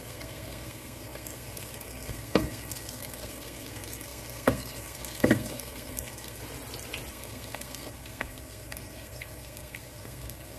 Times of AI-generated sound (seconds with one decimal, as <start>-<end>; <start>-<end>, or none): 0.0-6.4; 7.1-10.6